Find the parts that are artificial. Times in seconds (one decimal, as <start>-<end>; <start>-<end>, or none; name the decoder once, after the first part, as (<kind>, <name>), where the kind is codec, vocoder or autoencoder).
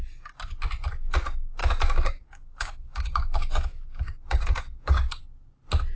1.6-5.2 (codec, DAC)